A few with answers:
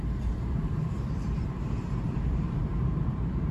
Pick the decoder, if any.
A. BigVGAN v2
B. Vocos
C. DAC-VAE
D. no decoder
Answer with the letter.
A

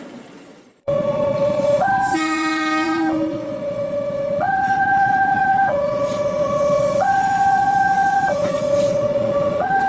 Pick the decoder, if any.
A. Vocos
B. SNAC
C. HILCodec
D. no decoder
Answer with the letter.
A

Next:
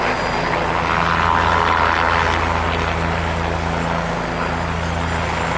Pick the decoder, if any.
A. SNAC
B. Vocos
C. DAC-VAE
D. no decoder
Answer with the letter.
D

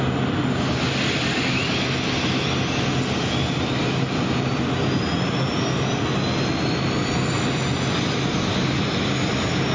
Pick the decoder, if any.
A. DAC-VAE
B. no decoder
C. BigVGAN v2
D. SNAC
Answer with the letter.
B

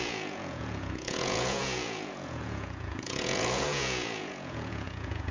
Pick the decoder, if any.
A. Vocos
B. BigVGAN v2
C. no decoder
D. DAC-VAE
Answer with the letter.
A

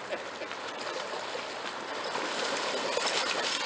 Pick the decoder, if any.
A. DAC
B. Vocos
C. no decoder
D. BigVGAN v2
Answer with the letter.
C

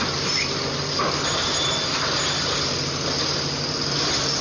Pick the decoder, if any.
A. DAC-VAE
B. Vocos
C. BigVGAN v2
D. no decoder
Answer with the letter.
D